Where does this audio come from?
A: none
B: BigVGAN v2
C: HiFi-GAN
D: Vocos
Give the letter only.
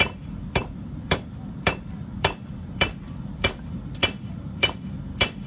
B